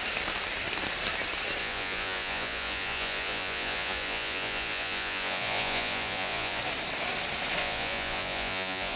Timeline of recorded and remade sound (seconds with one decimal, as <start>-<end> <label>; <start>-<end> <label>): 0.0-1.6 recorded; 1.6-6.6 remade; 6.6-7.6 recorded; 7.6-9.0 remade